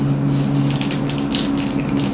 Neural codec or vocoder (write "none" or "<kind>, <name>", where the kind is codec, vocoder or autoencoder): none